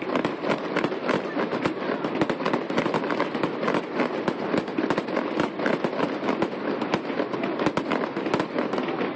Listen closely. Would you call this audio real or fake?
real